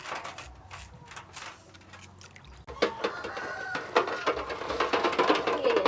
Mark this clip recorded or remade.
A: recorded